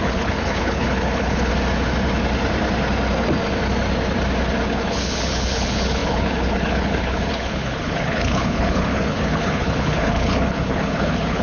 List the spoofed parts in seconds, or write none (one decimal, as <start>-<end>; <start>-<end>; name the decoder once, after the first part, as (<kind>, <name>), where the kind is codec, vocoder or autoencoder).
0.0-1.5 (codec, HILCodec); 4.7-11.4